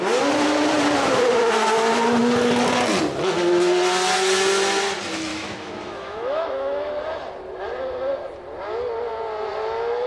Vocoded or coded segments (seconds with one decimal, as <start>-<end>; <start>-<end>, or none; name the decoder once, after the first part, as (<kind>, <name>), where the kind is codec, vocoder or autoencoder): 5.3-6.9 (autoencoder, DAC-VAE)